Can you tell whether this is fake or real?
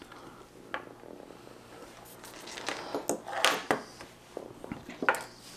real